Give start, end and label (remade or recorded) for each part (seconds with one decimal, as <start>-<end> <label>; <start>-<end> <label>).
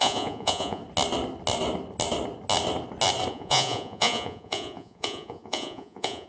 0.0-0.8 remade; 0.8-3.3 recorded; 3.3-6.3 remade